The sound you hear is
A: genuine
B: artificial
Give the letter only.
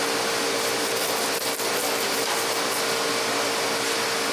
A